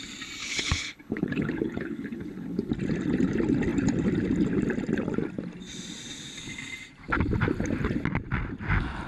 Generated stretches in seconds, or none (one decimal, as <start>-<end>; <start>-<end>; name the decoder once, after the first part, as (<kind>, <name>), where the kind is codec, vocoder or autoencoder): 0.4-2.7 (codec, HILCodec)